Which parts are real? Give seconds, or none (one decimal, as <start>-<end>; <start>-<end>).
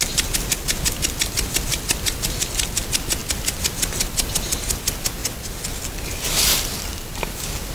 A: 0.0-7.7